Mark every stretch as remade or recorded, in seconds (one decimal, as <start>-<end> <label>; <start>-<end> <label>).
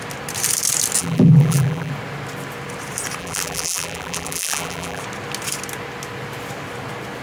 0.0-1.0 recorded; 1.0-1.9 remade; 1.9-3.2 recorded; 3.2-5.0 remade; 5.0-7.2 recorded